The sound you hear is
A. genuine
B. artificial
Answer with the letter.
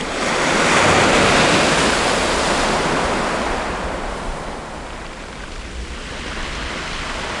A